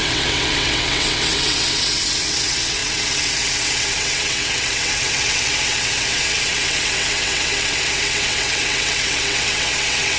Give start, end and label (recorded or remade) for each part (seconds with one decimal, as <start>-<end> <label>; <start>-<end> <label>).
0.0-10.2 remade